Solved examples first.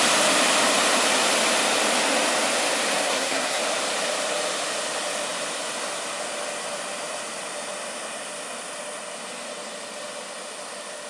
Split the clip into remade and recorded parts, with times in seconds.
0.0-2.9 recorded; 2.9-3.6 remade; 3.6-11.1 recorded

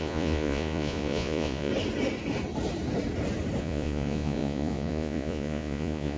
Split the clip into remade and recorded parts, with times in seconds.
0.0-1.7 remade; 1.7-3.6 recorded; 3.6-6.2 remade